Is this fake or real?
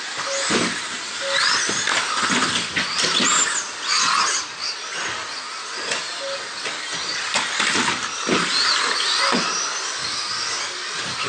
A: real